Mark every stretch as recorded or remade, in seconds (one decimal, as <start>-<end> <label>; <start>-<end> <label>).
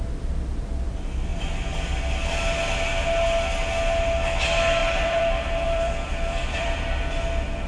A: 0.0-1.3 recorded; 1.3-2.0 remade; 2.0-4.8 recorded; 4.8-6.9 remade; 6.9-7.7 recorded